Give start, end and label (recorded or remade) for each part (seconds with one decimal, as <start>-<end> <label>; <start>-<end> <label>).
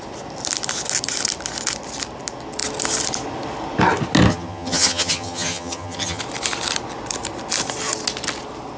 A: 0.0-4.3 recorded; 4.3-6.2 remade; 6.2-8.8 recorded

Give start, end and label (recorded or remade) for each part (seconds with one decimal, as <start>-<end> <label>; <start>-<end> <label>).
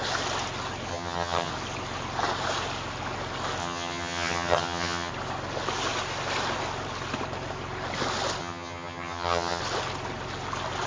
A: 0.0-0.9 recorded; 0.9-1.5 remade; 1.5-3.6 recorded; 3.6-5.1 remade; 5.1-8.4 recorded; 8.4-9.6 remade; 9.6-10.9 recorded